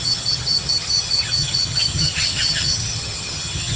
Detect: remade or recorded remade